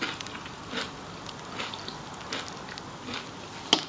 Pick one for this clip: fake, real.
real